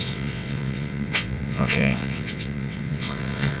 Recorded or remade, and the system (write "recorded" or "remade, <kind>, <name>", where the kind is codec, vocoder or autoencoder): remade, vocoder, WaveNeXt